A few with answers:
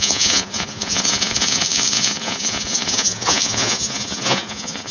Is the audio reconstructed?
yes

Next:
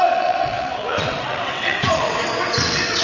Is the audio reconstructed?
yes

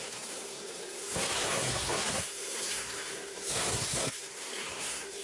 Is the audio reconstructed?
yes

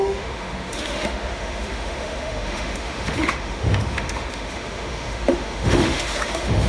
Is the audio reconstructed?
yes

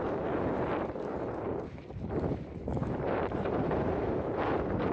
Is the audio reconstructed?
yes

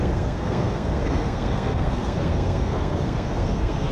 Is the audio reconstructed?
yes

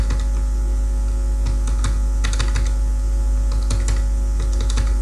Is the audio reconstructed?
no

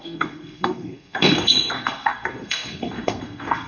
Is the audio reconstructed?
yes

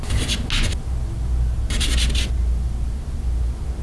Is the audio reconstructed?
no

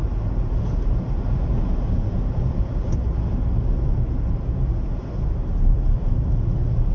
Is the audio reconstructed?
no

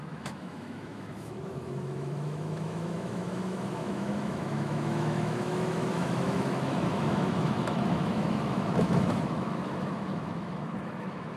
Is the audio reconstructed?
yes